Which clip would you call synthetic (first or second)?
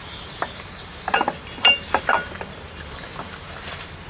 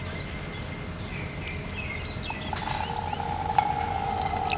first